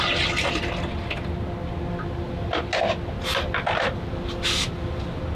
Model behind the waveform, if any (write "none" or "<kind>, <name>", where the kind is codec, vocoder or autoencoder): none